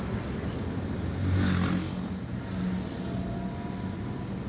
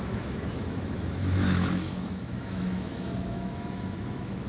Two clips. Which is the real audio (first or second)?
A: first